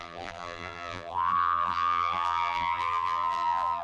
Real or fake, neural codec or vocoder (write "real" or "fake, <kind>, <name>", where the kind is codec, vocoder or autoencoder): fake, vocoder, BigVGAN v2